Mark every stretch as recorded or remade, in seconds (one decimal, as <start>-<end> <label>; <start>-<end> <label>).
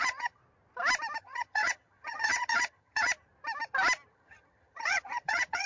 0.0-0.4 remade; 0.4-1.2 recorded; 1.2-3.1 remade; 3.1-4.1 recorded; 4.1-5.7 remade